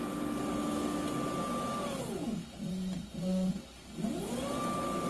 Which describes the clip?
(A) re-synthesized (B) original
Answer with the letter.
B